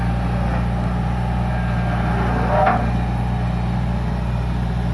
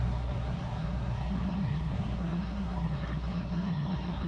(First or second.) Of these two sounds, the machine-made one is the second